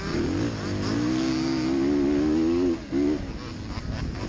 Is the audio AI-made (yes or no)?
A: no